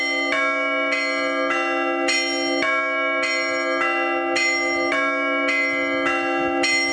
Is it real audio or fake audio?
real